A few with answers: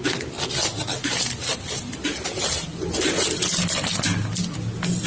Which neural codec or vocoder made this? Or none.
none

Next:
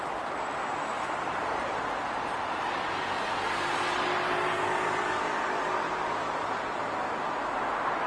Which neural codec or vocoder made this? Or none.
none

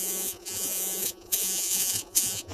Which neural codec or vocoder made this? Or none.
vocoder, Vocos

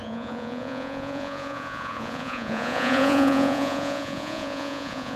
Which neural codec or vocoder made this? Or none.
vocoder, Vocos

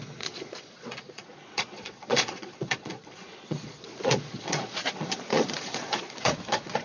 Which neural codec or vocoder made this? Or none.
vocoder, Vocos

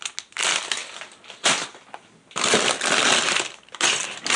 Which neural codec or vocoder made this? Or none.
none